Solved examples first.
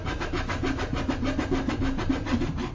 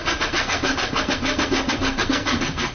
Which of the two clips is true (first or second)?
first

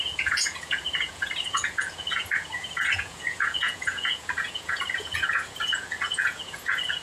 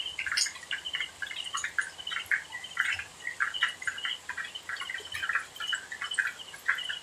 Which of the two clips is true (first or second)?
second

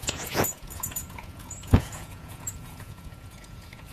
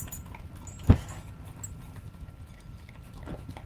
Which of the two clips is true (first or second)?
second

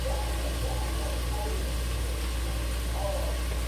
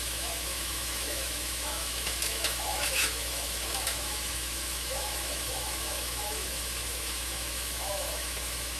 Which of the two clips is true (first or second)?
first